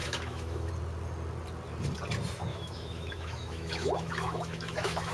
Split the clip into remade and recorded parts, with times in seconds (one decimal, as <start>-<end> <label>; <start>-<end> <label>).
0.0-0.7 remade; 0.7-2.5 recorded; 2.5-5.1 remade